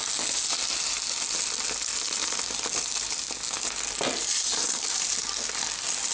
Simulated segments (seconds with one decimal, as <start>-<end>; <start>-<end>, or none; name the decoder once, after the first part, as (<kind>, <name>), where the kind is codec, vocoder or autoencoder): 1.9-2.4 (vocoder, BigVGAN v2); 4.5-5.3